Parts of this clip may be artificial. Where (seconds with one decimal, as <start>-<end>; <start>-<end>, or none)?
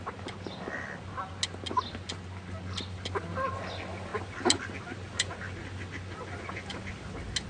none